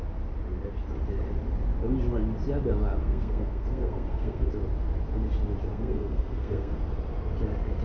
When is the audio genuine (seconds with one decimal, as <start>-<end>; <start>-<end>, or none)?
0.0-3.0; 4.5-5.7; 6.8-7.8